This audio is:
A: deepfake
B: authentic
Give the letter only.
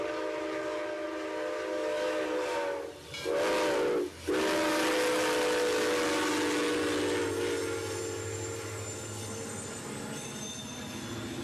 B